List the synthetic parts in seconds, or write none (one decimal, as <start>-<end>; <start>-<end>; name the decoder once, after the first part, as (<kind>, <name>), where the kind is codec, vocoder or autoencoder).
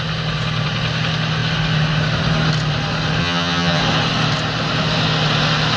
3.2-3.8 (vocoder, HiFi-GAN)